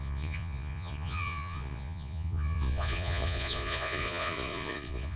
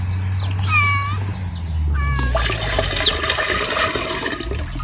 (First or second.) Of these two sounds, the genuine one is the second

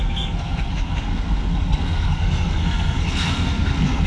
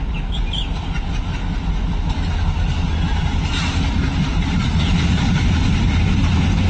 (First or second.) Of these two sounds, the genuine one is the second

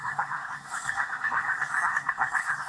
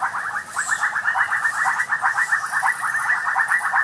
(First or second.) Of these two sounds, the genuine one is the second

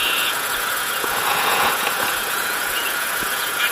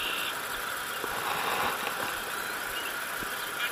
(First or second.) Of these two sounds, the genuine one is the second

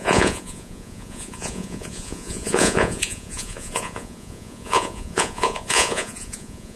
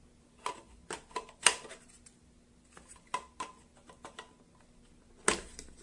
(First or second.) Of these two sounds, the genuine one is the second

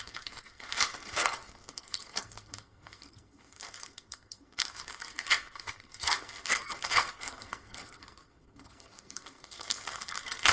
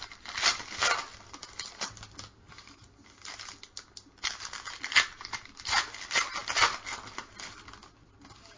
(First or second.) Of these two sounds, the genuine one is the second